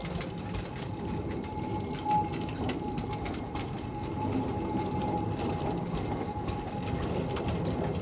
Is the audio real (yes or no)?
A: yes